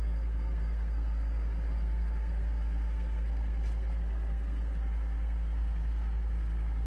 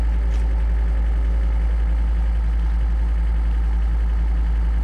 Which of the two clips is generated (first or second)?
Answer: first